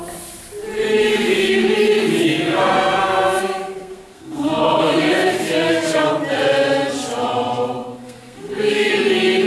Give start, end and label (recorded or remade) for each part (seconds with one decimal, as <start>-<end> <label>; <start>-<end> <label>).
0.0-1.1 recorded; 1.1-1.7 remade; 1.7-2.1 recorded; 2.1-6.1 remade; 6.1-7.8 recorded; 7.8-8.9 remade; 8.9-9.5 recorded